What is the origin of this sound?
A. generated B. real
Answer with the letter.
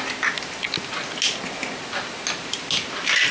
B